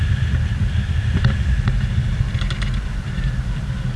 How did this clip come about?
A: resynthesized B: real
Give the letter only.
B